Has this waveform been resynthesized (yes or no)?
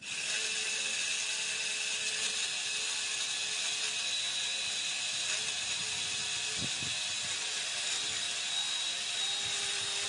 no